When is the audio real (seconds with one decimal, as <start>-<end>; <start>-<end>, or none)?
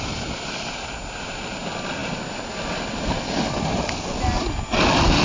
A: 0.0-5.2